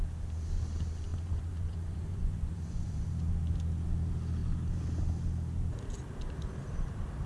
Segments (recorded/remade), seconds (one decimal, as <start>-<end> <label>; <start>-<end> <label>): 0.0-1.1 recorded; 1.1-3.1 remade; 3.1-7.3 recorded